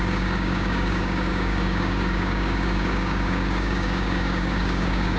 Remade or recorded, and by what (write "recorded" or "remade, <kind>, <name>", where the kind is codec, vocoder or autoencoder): remade, codec, DAC